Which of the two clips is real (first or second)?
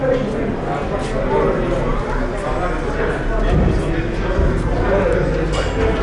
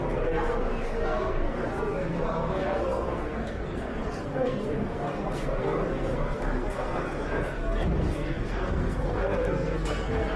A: first